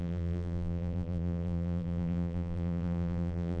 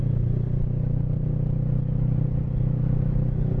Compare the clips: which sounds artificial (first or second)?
first